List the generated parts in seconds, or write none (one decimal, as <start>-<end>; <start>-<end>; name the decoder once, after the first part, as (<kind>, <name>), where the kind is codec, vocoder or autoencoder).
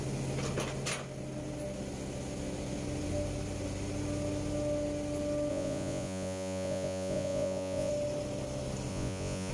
5.5-7.9 (vocoder, Vocos); 8.9-9.5